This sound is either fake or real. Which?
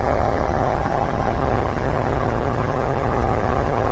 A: fake